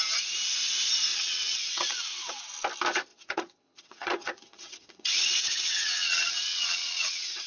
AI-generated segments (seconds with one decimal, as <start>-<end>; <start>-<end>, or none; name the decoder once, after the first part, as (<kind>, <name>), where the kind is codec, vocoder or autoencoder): 1.1-2.4 (vocoder, WaveNeXt); 3.1-7.5